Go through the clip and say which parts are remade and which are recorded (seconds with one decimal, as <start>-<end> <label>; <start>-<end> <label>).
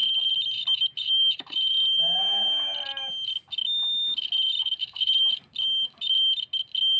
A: 0.0-2.0 remade; 2.0-4.5 recorded; 4.5-5.3 remade; 5.3-7.0 recorded